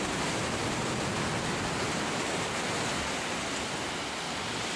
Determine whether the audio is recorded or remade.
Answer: recorded